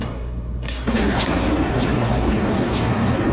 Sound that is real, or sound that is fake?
fake